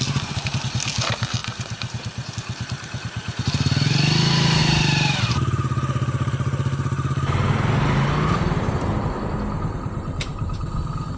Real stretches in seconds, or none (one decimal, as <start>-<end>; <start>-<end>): 0.0-1.4; 2.3-4.6; 5.4-10.3